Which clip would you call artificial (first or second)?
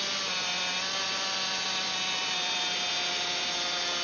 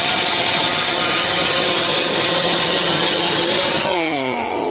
second